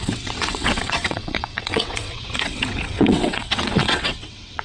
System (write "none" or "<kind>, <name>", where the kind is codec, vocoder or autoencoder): vocoder, WaveNeXt